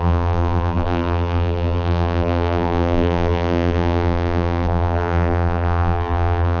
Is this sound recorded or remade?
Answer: remade